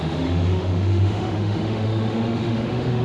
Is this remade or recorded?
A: remade